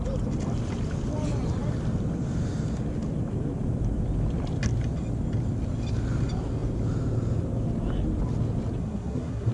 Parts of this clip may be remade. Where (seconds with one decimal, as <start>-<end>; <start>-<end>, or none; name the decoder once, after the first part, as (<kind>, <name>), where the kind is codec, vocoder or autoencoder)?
8.8-9.5 (codec, SNAC)